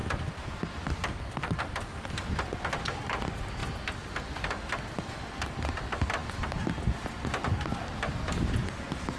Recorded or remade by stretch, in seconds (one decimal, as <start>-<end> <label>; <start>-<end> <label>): 0.0-9.2 recorded